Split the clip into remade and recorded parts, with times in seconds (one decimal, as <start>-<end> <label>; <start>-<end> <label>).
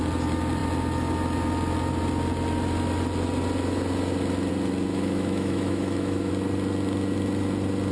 0.0-4.9 recorded; 4.9-6.3 remade; 6.3-7.9 recorded